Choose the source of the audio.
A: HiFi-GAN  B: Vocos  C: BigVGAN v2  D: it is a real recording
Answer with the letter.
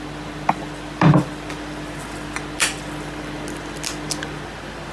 C